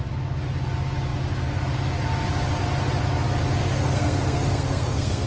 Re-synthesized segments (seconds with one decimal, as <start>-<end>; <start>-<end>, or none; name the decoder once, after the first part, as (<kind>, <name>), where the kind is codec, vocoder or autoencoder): 3.6-5.3 (codec, SNAC)